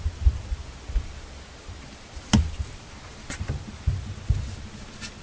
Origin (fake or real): real